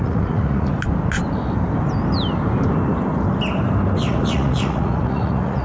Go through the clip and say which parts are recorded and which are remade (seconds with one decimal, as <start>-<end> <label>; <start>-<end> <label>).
0.0-0.7 remade; 0.7-4.1 recorded; 4.1-5.6 remade